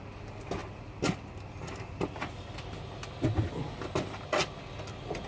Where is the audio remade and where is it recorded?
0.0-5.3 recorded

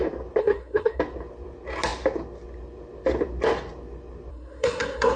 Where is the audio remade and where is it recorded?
0.0-0.4 recorded; 0.4-1.0 remade; 1.0-4.3 recorded; 4.3-5.2 remade

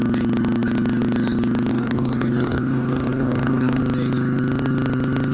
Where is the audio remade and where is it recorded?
0.0-1.7 recorded; 1.7-3.8 remade; 3.8-5.3 recorded

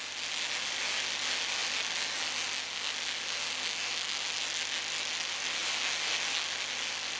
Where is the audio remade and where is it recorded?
0.0-7.2 recorded

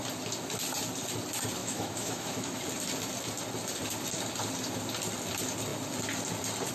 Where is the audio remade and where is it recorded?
0.0-1.6 recorded; 1.6-2.6 remade; 2.6-6.7 recorded